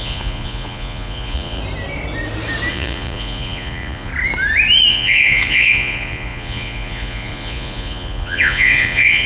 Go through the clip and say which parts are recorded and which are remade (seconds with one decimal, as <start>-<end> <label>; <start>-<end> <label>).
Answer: 0.0-1.6 remade; 1.6-2.7 recorded; 2.7-4.1 remade; 4.1-4.9 recorded; 4.9-9.3 remade